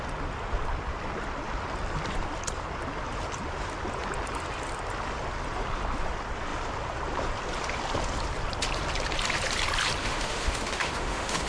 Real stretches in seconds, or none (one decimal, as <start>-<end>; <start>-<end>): 0.0-10.0